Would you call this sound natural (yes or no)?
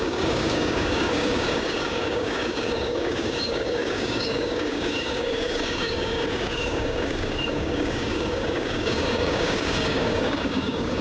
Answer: no